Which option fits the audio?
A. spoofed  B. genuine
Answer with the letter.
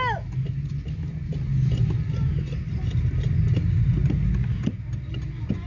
B